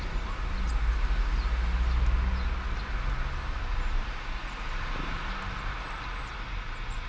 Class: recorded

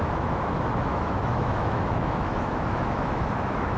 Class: remade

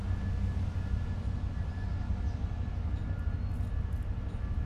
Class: recorded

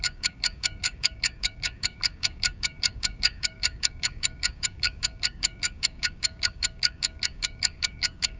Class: remade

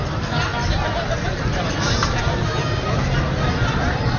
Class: recorded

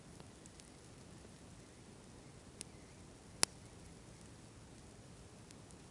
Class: recorded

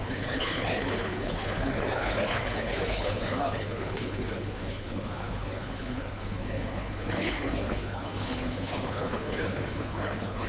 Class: remade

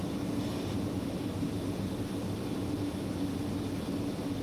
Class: recorded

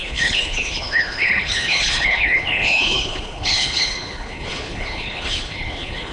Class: remade